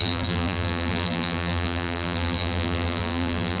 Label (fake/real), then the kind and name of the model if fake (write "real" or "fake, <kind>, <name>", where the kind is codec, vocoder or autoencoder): fake, vocoder, BigVGAN v2